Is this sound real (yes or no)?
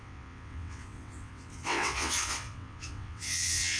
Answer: no